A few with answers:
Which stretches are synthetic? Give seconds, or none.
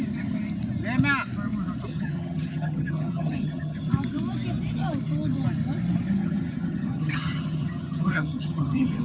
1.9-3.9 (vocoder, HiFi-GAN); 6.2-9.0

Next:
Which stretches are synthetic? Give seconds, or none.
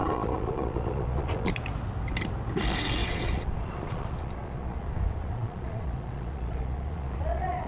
0.0-1.5 (vocoder, Vocos); 3.0-7.7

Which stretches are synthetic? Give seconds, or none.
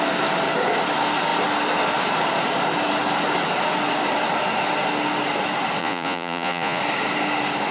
5.8-6.8 (vocoder, Vocos)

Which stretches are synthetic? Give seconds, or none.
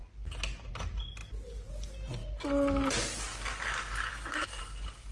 4.1-4.6 (codec, SNAC)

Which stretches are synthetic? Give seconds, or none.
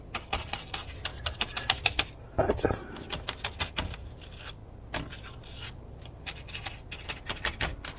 none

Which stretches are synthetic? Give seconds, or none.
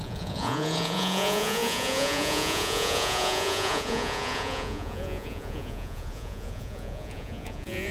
0.0-7.9 (vocoder, Vocos)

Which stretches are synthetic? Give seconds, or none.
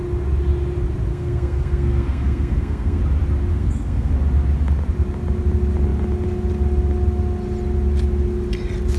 1.1-3.0 (codec, SNAC); 3.5-4.1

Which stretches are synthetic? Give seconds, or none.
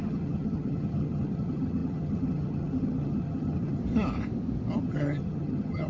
0.0-3.8 (vocoder, HiFi-GAN); 4.8-5.9